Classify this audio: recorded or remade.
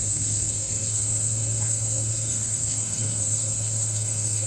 remade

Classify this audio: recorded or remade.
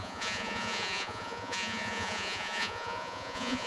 remade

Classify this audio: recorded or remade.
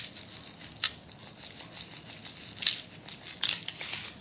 recorded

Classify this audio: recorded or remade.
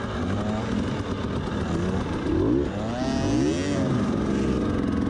recorded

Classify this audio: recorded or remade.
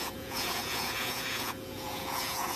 remade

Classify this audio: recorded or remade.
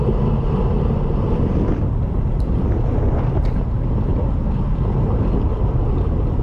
recorded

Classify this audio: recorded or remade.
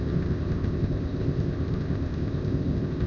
remade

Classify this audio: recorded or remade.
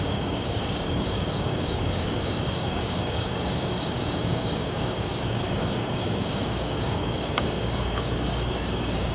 remade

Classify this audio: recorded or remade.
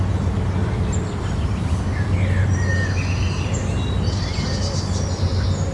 recorded